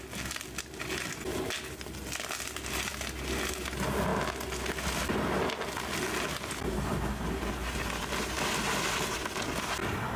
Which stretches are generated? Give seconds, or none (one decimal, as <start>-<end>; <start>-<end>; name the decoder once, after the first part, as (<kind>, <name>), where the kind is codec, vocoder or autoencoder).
none